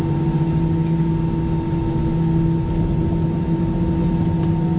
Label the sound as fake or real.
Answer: real